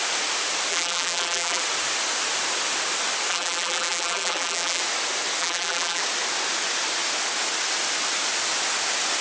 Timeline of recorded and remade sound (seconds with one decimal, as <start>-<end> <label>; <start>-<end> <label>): 0.0-0.7 recorded; 0.7-1.6 remade; 1.6-3.3 recorded; 3.3-4.8 remade; 4.8-5.4 recorded; 5.4-6.0 remade; 6.0-9.2 recorded